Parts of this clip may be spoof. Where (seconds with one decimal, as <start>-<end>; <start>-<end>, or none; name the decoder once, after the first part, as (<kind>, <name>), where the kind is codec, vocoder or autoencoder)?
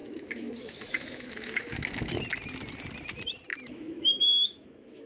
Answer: 0.0-2.2 (autoencoder, DAC-VAE); 3.5-5.1